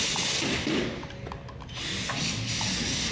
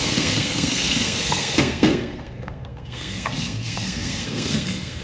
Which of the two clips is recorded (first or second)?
first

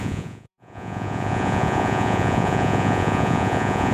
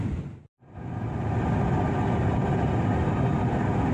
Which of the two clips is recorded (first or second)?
second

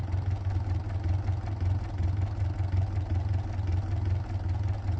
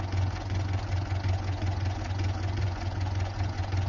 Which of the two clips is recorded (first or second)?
first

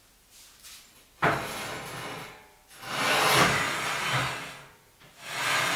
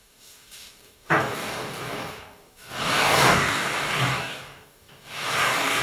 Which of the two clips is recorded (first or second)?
first